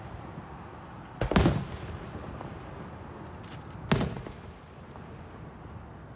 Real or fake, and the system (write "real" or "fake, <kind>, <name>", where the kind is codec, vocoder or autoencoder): real